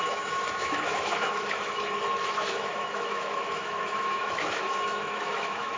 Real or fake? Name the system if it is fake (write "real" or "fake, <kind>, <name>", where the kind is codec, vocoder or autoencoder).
fake, autoencoder, DAC-VAE